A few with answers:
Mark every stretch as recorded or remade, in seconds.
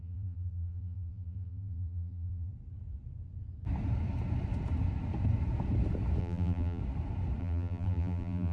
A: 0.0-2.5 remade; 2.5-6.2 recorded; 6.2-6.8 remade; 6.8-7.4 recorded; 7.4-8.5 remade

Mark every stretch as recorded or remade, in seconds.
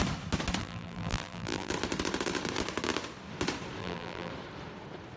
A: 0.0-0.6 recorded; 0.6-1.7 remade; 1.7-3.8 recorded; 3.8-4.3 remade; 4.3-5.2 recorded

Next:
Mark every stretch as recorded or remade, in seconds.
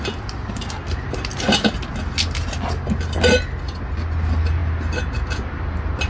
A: 0.0-6.1 recorded